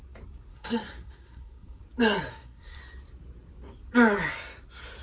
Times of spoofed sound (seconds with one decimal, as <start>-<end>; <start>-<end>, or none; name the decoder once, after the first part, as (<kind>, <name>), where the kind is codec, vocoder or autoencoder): 0.5-1.8 (codec, SNAC); 2.3-2.8